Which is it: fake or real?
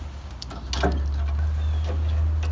real